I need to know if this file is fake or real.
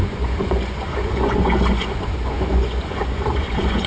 fake